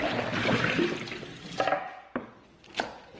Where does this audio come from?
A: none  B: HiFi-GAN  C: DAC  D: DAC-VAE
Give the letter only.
A